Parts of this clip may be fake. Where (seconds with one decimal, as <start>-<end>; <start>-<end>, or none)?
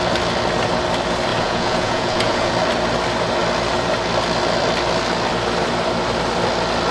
1.3-2.5